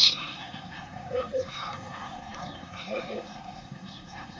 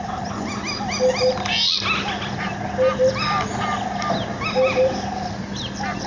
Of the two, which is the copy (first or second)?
first